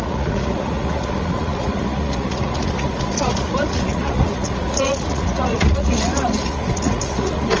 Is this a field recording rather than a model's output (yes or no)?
no